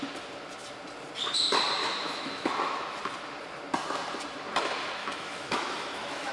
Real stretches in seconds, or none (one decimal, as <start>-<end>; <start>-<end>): 0.0-1.8; 3.0-5.0